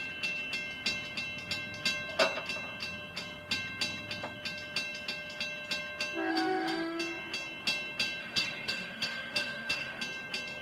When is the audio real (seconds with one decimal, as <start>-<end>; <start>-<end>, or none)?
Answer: 0.0-6.3; 7.0-8.2; 10.0-10.6